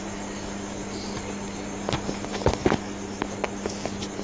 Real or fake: real